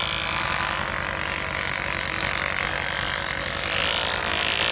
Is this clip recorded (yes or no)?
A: yes